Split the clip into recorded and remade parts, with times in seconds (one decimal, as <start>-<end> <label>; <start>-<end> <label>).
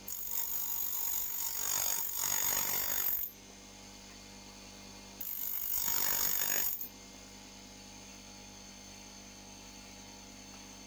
0.0-10.9 recorded